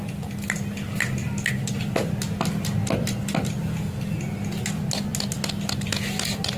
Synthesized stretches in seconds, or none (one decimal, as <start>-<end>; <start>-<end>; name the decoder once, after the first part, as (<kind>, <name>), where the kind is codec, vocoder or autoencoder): none